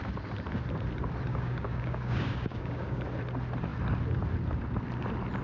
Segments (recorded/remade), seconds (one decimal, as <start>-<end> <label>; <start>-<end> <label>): 0.0-1.3 recorded; 1.3-3.0 remade; 3.0-5.4 recorded